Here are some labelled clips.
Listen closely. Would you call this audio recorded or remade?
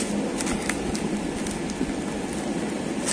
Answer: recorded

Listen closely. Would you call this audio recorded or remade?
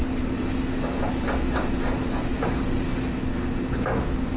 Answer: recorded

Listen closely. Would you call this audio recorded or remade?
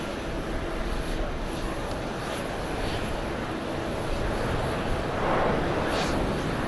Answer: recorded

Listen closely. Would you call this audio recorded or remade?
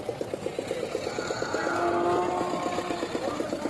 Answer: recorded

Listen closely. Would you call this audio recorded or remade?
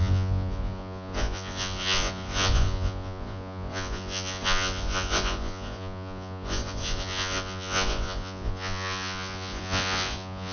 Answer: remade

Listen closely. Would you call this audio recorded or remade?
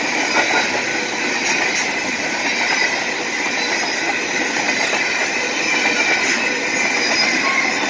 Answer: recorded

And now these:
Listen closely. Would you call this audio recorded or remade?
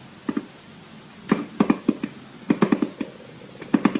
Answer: recorded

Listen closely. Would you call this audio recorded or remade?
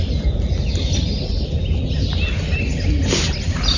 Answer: recorded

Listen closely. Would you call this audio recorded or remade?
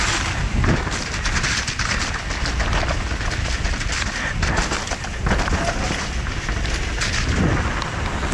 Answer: recorded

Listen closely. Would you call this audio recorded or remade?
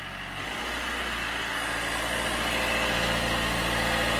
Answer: recorded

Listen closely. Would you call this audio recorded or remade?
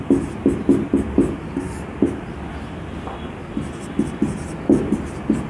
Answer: recorded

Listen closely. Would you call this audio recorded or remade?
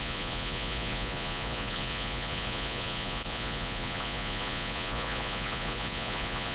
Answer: remade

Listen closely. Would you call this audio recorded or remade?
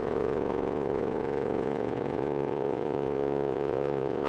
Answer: remade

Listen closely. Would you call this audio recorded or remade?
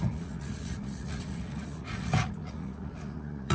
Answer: remade